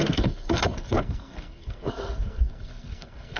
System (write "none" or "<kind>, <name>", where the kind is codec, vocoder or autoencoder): codec, SNAC